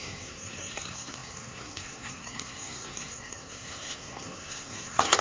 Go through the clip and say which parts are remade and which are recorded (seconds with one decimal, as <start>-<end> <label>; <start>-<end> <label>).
0.0-5.2 remade